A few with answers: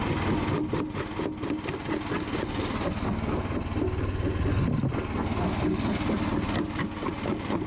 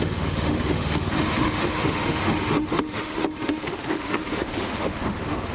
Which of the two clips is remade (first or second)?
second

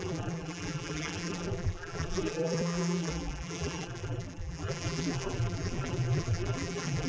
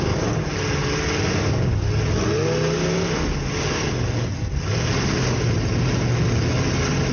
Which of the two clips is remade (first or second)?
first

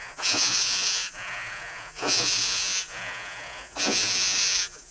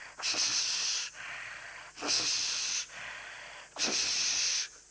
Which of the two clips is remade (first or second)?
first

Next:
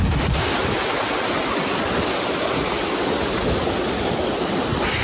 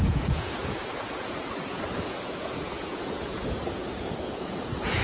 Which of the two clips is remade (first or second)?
second